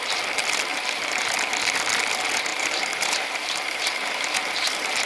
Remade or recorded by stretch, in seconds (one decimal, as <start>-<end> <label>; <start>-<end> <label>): 0.0-0.7 recorded; 0.7-1.3 remade; 1.3-2.5 recorded; 2.5-5.1 remade